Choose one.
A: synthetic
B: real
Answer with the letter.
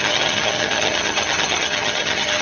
A